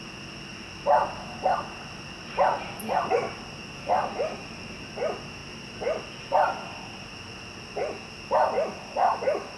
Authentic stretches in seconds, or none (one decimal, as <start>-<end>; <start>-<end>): 0.0-9.6